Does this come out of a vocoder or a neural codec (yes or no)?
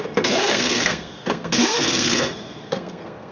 yes